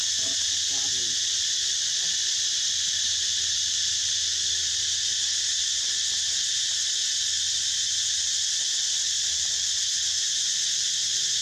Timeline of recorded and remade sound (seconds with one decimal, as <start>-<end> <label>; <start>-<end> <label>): 0.0-0.9 recorded; 0.9-11.4 remade